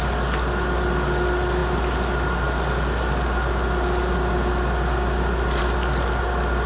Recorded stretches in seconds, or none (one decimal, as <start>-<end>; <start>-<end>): 0.0-6.7